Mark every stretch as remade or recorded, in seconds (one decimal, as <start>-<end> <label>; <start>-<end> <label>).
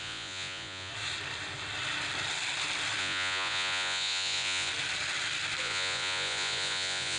0.0-0.9 remade; 0.9-3.0 recorded; 3.0-4.7 remade; 4.7-5.6 recorded; 5.6-7.2 remade